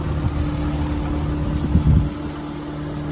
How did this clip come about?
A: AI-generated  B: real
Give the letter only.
B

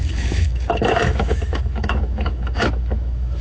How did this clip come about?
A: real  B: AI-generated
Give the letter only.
B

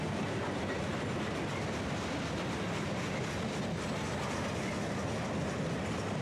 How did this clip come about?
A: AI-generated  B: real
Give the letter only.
B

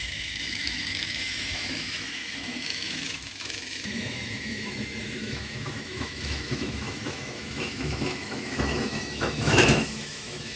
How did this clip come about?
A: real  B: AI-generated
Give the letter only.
B